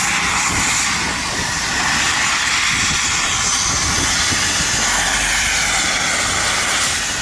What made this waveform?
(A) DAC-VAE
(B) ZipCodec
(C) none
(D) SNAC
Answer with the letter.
C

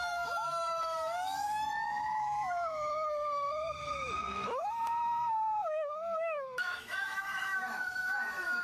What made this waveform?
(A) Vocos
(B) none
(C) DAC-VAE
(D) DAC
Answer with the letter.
C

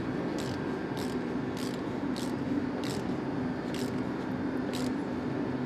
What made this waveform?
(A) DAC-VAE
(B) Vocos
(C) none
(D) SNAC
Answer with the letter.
C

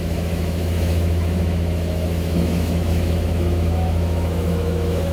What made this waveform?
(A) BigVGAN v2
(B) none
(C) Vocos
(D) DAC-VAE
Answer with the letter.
D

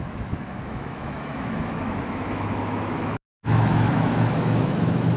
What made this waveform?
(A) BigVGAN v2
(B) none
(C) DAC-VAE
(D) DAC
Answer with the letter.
C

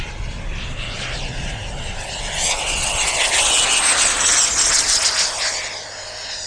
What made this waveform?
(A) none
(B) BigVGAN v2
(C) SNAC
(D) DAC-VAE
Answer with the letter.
A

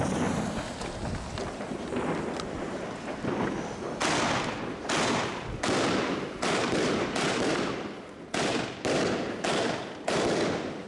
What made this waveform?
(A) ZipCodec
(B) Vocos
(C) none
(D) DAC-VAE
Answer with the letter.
C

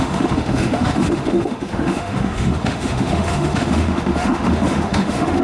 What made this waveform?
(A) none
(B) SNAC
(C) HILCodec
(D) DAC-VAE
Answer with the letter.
D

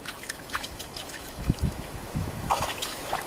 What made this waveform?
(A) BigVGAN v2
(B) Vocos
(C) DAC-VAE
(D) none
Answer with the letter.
C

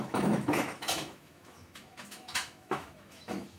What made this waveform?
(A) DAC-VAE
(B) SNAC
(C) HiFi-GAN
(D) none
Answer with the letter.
A